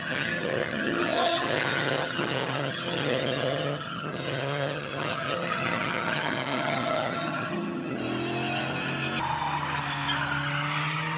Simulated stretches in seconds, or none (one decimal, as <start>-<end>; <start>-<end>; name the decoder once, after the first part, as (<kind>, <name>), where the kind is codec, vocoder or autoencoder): 0.0-8.0 (vocoder, HiFi-GAN)